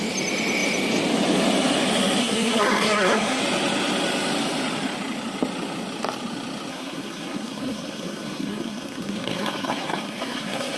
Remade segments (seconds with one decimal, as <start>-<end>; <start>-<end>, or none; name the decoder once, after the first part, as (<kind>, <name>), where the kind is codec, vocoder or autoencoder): 2.2-3.4 (codec, SNAC); 6.7-10.8